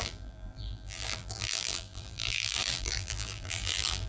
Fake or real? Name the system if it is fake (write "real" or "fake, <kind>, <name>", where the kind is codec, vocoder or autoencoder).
fake, vocoder, BigVGAN v2